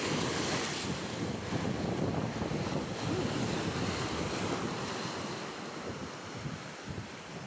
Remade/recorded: recorded